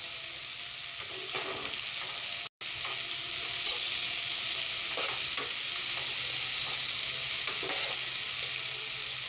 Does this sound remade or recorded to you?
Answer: recorded